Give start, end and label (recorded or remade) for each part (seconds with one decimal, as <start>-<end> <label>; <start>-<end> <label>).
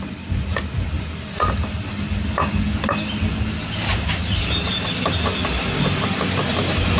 0.0-7.0 recorded